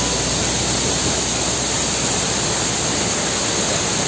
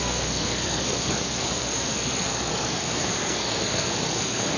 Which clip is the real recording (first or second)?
first